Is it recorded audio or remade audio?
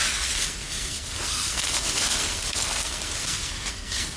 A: remade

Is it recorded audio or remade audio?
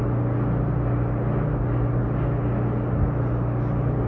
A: recorded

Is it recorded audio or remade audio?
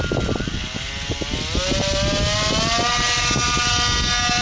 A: recorded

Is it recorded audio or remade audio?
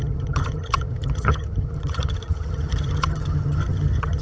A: remade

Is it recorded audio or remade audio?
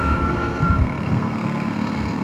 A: remade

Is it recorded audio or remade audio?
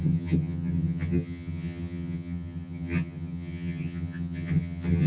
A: remade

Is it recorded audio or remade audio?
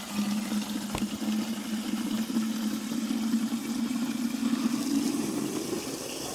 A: recorded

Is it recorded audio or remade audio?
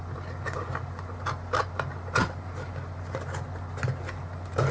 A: recorded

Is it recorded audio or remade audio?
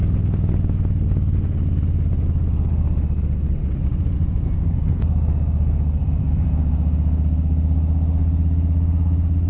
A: recorded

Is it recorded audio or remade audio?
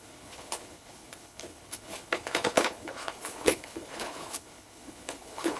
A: remade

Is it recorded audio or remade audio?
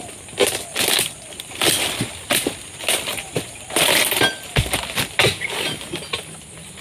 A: recorded